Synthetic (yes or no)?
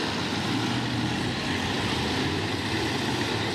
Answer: yes